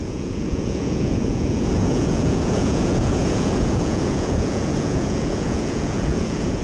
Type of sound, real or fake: fake